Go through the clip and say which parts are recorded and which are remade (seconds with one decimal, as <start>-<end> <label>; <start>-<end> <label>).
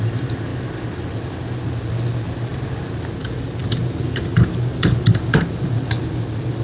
0.0-6.6 recorded